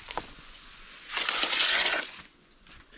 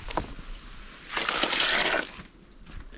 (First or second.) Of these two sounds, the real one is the second